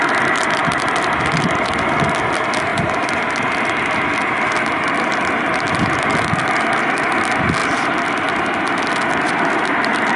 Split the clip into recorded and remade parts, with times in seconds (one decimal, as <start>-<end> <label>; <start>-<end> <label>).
0.0-0.6 recorded; 0.6-1.3 remade; 1.3-7.6 recorded; 7.6-8.7 remade; 8.7-10.2 recorded